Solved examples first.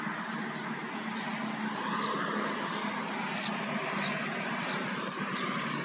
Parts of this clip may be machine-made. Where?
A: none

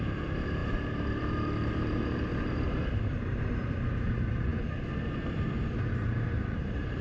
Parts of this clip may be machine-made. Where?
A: 0.0-4.5 (vocoder, BigVGAN v2); 5.9-7.0

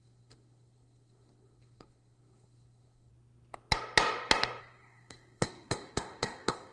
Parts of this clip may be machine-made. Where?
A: 0.0-3.1 (codec, SNAC); 4.6-6.7

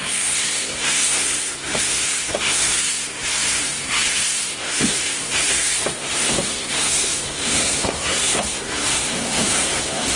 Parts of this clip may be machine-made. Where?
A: 0.0-10.2 (codec, SNAC)

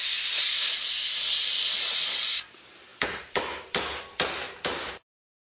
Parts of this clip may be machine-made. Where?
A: none